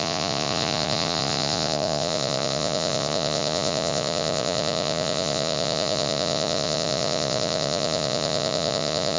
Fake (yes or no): yes